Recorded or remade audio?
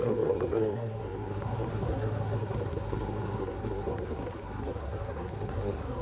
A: remade